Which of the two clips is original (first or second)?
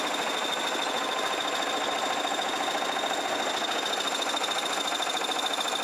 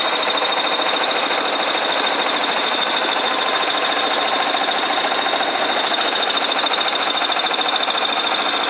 first